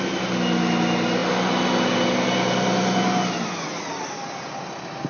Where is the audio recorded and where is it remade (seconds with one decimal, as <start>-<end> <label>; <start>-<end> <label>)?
0.0-5.1 recorded